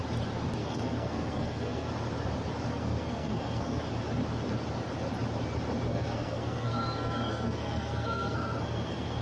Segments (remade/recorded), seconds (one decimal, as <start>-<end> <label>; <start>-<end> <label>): 0.0-0.6 recorded; 0.6-1.9 remade; 1.9-2.7 recorded; 2.7-3.8 remade; 3.8-5.9 recorded; 5.9-9.2 remade